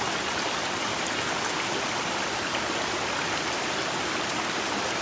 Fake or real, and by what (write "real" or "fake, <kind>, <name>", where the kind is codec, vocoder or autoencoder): real